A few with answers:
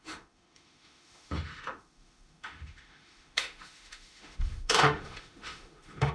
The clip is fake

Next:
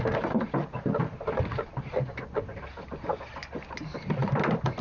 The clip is real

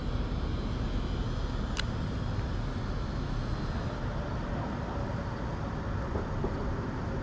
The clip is real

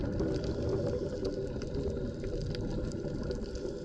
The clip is real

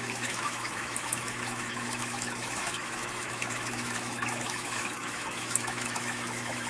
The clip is fake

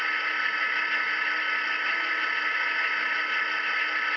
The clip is real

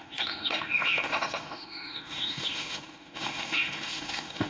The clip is fake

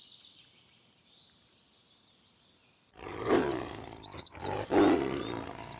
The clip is real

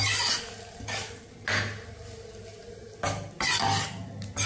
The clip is real